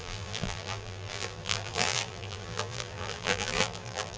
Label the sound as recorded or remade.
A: remade